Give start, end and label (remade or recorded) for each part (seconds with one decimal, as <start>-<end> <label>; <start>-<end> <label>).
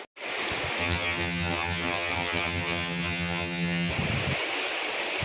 0.0-0.8 recorded; 0.8-3.9 remade; 3.9-5.2 recorded